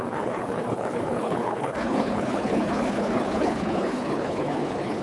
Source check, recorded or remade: remade